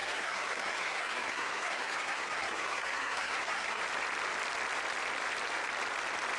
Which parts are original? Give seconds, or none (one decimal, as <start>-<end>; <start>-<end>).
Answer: 3.8-6.4